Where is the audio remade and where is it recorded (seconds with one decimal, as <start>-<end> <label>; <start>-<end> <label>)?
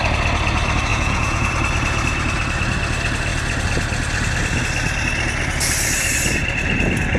0.0-0.9 recorded; 0.9-1.5 remade; 1.5-7.2 recorded